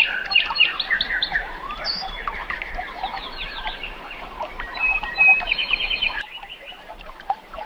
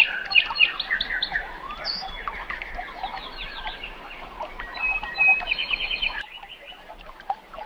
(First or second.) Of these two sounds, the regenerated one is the first